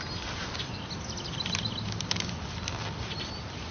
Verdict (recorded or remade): recorded